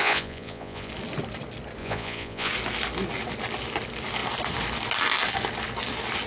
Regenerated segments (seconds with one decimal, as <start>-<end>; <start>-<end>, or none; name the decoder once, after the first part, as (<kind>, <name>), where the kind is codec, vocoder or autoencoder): 0.0-0.9 (vocoder, Vocos); 1.8-2.5